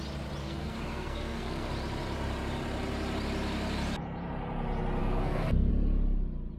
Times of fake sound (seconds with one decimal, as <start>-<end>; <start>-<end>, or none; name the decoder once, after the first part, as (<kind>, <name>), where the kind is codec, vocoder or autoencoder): 0.4-1.7 (codec, SNAC); 5.0-5.7